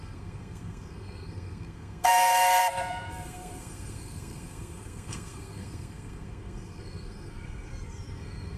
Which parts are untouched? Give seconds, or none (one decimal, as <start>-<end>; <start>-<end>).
2.6-3.1